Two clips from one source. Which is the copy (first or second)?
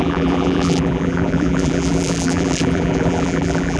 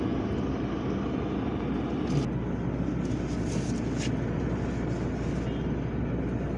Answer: first